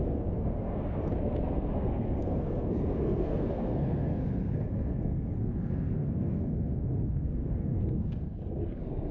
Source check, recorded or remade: remade